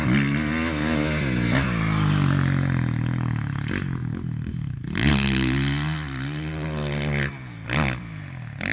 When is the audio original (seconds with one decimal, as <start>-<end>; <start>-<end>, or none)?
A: 0.0-8.7